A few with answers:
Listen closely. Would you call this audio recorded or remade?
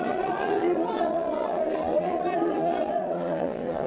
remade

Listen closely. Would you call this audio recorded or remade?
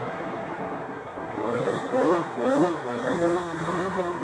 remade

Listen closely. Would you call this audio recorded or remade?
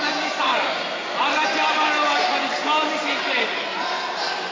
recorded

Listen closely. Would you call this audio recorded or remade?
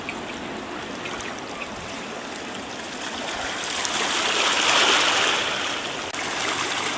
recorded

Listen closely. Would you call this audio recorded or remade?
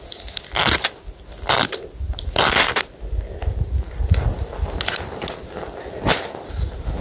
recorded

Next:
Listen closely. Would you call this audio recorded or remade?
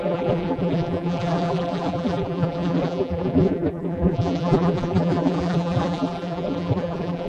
remade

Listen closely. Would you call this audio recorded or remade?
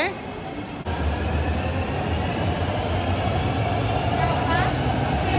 recorded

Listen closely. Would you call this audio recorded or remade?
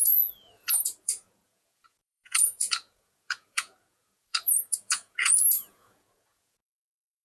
remade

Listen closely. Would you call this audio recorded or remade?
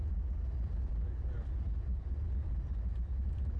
recorded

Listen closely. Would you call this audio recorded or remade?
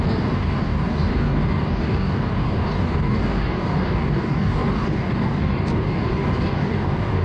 remade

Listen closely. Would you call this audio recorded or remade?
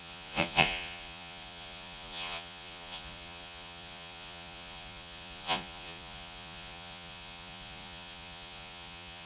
remade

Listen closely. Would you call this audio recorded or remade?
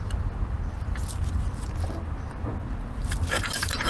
recorded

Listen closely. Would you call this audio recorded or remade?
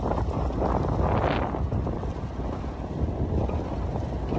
recorded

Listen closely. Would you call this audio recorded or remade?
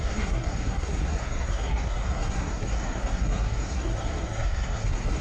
remade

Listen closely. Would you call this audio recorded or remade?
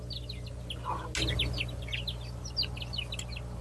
recorded